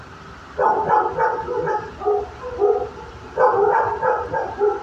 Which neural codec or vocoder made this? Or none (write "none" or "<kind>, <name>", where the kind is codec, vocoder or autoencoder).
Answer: none